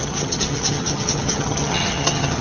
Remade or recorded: remade